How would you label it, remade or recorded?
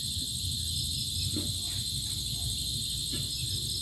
recorded